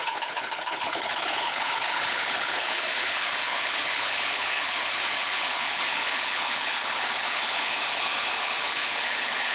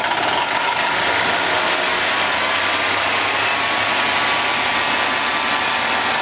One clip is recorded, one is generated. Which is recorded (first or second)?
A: second